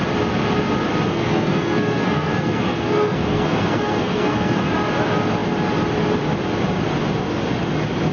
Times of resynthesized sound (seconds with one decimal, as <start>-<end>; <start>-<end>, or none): 1.1-4.6